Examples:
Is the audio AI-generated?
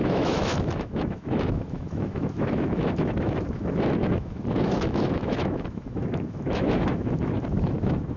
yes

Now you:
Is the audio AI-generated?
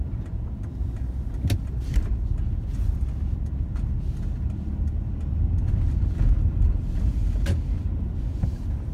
no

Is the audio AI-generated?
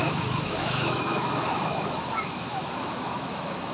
yes